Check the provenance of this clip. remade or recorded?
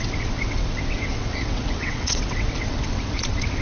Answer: remade